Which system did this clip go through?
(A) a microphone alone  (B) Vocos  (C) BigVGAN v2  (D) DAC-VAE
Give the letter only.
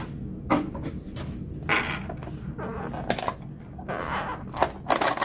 A